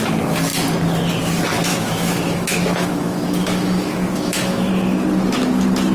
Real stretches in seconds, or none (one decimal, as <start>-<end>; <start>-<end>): 0.0-1.7; 4.7-5.9

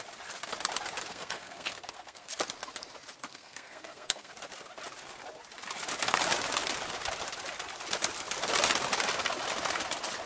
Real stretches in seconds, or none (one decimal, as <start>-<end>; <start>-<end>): 0.0-1.1; 2.3-3.3; 4.3-10.3

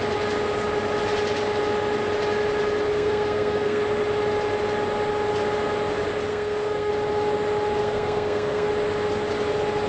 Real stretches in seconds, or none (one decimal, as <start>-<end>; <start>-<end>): 0.0-2.9; 3.8-6.3; 6.9-7.8; 8.7-9.9

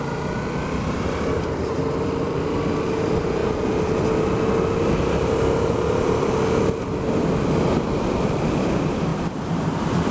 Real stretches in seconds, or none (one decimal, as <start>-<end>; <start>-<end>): 3.4-8.3; 9.1-10.1

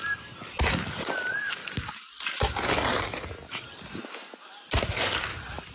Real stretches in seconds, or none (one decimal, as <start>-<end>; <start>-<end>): 0.0-5.7

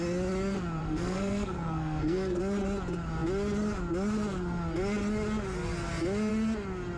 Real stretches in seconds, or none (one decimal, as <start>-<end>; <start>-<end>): 0.0-0.8; 2.4-7.0

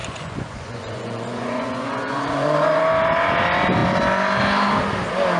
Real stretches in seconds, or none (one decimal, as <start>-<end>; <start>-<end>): 2.8-5.4

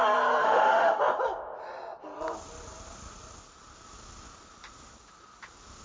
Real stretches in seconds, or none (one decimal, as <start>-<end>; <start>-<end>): 0.0-0.4; 1.0-5.8